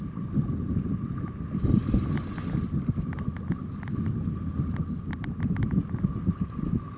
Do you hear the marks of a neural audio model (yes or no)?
no